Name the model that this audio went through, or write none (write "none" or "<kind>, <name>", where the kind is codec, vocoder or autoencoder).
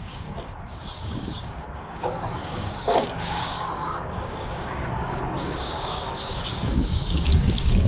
codec, DAC